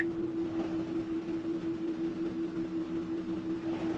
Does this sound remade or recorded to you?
recorded